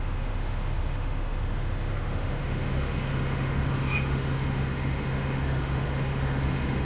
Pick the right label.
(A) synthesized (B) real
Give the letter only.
A